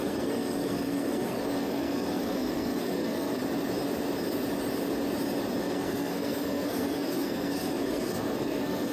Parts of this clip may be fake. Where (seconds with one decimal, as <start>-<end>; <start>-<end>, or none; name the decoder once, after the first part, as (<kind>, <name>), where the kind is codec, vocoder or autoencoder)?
0.0-3.4 (codec, SNAC); 5.6-8.9